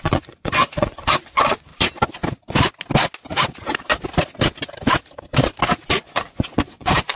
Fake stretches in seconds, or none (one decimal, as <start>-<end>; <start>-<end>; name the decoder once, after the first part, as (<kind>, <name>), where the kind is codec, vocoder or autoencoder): 0.0-1.7 (vocoder, Vocos); 6.0-7.2